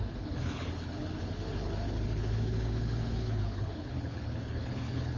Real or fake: fake